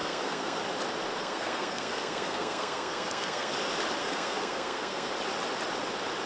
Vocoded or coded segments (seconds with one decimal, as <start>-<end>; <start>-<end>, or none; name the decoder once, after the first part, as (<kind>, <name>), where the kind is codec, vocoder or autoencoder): 0.0-0.6 (codec, SNAC); 1.2-3.5; 4.0-5.1